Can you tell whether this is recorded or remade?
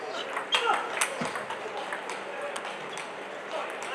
recorded